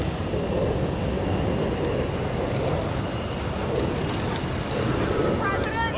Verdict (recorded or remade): recorded